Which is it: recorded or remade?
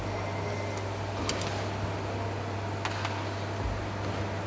recorded